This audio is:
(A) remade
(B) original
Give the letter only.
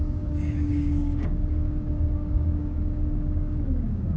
A